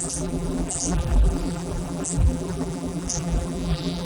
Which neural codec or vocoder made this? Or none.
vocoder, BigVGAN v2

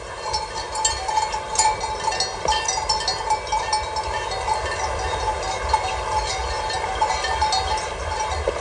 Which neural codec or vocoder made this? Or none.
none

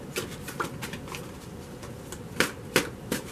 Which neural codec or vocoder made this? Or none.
none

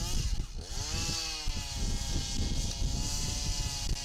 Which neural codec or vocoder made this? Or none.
none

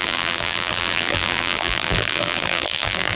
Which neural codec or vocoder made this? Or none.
vocoder, BigVGAN v2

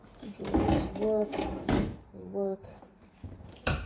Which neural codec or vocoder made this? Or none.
vocoder, BigVGAN v2